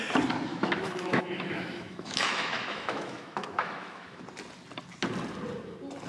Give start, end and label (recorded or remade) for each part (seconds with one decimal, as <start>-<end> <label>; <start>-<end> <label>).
0.0-0.5 recorded; 0.5-4.2 remade; 4.2-6.1 recorded